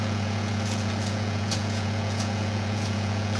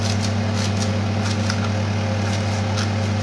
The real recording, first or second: second